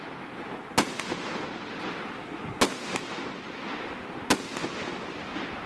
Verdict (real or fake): real